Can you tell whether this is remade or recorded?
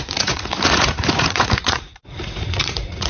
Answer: remade